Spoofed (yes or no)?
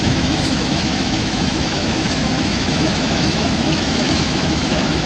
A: yes